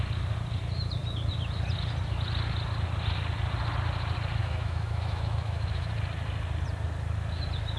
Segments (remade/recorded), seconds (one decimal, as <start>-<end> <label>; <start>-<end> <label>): 0.0-4.4 recorded; 4.4-5.9 remade; 5.9-7.8 recorded